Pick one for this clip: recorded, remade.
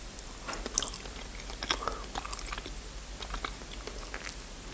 recorded